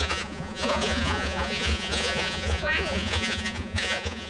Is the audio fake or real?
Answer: fake